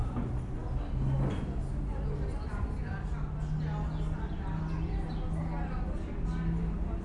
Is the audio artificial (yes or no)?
no